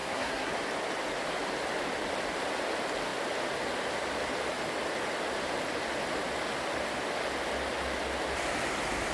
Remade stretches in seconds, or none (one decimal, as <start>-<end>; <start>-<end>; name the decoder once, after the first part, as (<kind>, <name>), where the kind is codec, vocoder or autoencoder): 0.0-0.5 (codec, SNAC)